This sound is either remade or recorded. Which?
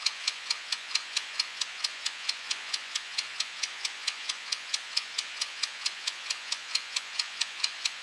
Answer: remade